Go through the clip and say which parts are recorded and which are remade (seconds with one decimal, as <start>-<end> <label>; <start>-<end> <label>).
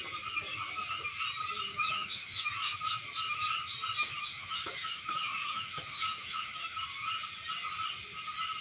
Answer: 0.0-1.7 recorded; 1.7-2.8 remade; 2.8-4.0 recorded; 4.0-6.8 remade; 6.8-8.6 recorded